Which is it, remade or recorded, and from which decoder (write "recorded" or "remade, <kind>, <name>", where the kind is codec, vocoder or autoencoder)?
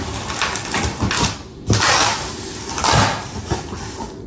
recorded